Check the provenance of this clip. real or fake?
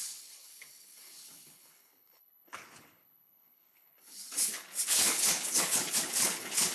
fake